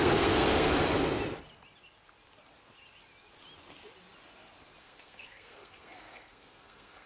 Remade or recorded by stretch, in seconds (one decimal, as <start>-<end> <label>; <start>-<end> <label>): 0.0-0.7 remade; 0.7-4.8 recorded; 4.8-7.1 remade